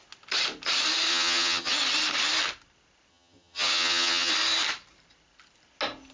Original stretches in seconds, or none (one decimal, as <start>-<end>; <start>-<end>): 0.0-1.1; 1.7-3.1; 4.3-6.1